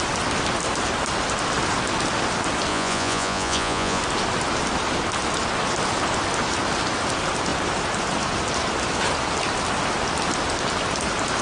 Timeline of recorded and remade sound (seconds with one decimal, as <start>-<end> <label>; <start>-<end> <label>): 0.0-2.7 recorded; 2.7-4.0 remade; 4.0-11.4 recorded